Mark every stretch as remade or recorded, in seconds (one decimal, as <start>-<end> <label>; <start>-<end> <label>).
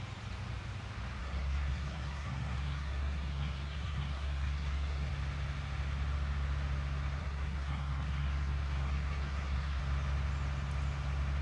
0.0-1.2 recorded; 1.2-5.1 remade; 5.1-7.2 recorded; 7.2-9.8 remade; 9.8-11.4 recorded